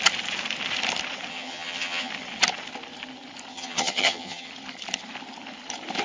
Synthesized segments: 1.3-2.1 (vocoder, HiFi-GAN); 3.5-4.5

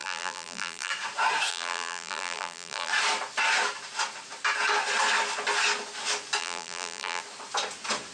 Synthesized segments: 0.0-0.9 (vocoder, BigVGAN v2); 1.5-2.9; 6.4-7.2

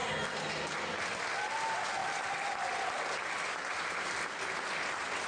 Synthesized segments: none

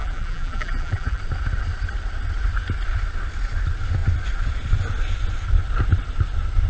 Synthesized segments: 0.0-1.2 (vocoder, BigVGAN v2)